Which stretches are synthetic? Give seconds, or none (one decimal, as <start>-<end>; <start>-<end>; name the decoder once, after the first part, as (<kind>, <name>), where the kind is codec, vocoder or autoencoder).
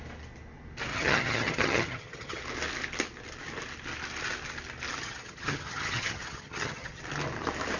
0.9-2.4 (vocoder, HiFi-GAN); 5.0-7.0